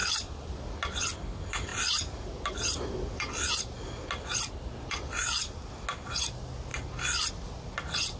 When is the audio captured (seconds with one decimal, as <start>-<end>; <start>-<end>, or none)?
0.0-8.2